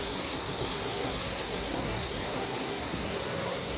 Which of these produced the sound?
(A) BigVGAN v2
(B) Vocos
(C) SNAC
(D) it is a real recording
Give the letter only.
C